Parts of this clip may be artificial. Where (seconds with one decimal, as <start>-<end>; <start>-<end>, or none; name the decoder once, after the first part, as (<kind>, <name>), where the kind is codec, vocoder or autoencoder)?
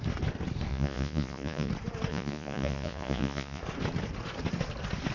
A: 0.7-1.7 (vocoder, Vocos); 2.1-3.6